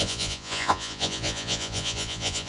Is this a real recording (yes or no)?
no